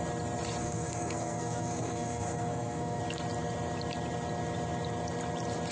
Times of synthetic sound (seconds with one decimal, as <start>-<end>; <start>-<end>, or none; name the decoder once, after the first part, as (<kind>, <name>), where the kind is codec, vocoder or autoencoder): 0.6-3.0 (codec, SNAC)